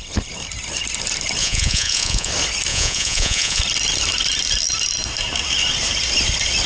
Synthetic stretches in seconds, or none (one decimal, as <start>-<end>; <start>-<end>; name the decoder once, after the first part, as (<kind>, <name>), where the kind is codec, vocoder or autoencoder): 1.4-2.3 (vocoder, Vocos); 2.7-3.6